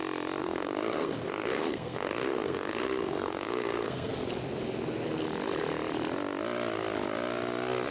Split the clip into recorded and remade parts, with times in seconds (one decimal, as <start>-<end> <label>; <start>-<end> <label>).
0.0-0.4 recorded; 0.4-4.1 remade; 4.1-7.9 recorded